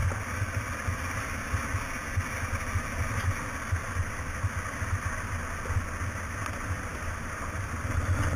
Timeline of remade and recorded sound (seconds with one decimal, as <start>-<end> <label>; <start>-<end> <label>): 0.0-6.9 recorded; 6.9-7.8 remade; 7.8-8.4 recorded